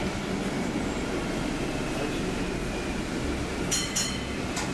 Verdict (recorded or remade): recorded